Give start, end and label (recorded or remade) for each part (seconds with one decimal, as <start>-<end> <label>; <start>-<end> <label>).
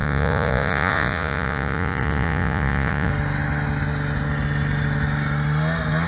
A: 0.0-3.1 remade; 3.1-6.1 recorded